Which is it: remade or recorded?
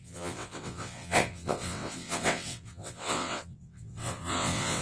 remade